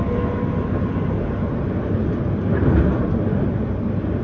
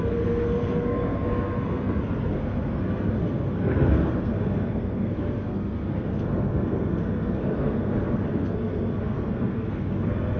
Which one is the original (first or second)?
first